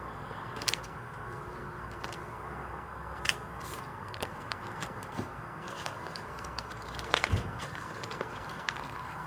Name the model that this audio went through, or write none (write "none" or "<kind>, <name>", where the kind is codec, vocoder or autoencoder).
codec, SNAC